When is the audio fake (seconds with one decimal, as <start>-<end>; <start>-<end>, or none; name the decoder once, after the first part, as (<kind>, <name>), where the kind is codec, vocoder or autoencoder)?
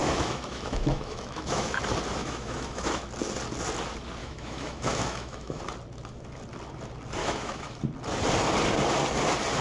0.0-1.8 (autoencoder, DAC-VAE); 2.2-3.0; 4.2-5.6; 7.2-7.8